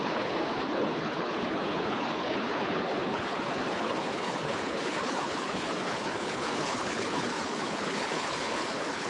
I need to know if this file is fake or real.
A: fake